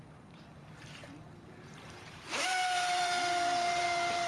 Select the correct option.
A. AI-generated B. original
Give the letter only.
A